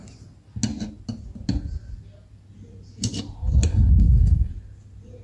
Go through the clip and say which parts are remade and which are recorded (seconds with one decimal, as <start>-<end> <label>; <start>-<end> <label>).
0.0-3.7 recorded; 3.7-4.5 remade; 4.5-5.2 recorded